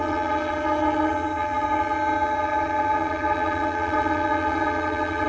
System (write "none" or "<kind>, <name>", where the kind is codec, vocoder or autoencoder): vocoder, HiFi-GAN